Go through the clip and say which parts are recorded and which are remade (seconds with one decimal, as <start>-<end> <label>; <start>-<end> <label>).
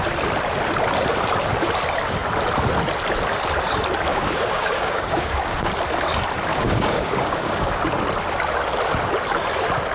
0.0-4.1 recorded; 4.1-5.7 remade; 5.7-6.5 recorded; 6.5-7.8 remade; 7.8-9.9 recorded